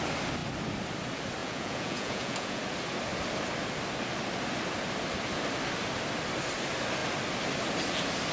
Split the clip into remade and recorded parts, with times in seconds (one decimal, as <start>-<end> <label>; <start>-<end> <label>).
0.0-1.4 recorded; 1.4-2.6 remade; 2.6-8.3 recorded

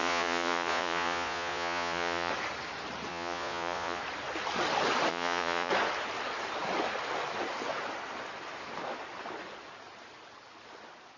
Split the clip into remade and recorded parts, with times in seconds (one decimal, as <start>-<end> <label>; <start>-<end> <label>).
0.0-2.3 remade; 2.3-3.1 recorded; 3.1-4.0 remade; 4.0-5.1 recorded; 5.1-5.7 remade; 5.7-11.2 recorded

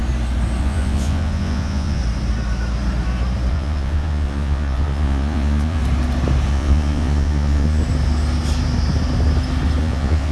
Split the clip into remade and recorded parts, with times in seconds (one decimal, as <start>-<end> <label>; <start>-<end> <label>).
0.0-0.6 recorded; 0.6-2.0 remade; 2.0-3.5 recorded; 3.5-5.8 remade; 5.8-6.5 recorded; 6.5-7.8 remade; 7.8-9.8 recorded; 9.8-10.3 remade

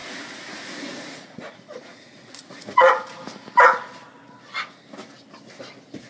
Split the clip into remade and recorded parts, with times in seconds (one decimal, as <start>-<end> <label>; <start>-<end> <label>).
0.0-3.0 remade; 3.0-6.1 recorded

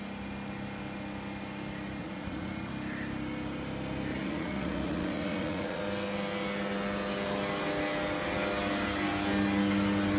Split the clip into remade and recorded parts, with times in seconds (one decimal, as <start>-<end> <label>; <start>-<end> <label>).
0.0-2.0 recorded; 2.0-2.7 remade; 2.7-4.1 recorded; 4.1-5.8 remade; 5.8-10.2 recorded

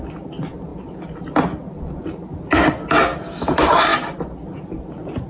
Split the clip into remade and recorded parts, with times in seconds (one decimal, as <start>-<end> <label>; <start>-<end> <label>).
0.0-5.3 recorded

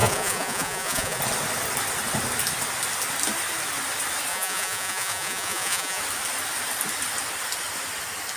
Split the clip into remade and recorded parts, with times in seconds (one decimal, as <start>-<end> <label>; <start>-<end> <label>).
0.0-1.2 remade; 1.2-4.3 recorded; 4.3-6.0 remade; 6.0-8.4 recorded